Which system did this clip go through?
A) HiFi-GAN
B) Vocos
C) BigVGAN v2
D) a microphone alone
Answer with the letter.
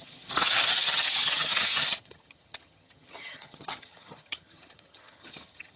A